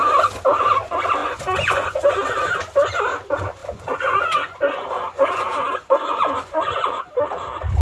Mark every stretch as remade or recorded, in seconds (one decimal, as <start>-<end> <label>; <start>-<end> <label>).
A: 0.0-1.2 recorded; 1.2-2.1 remade; 2.1-3.6 recorded; 3.6-7.0 remade; 7.0-7.8 recorded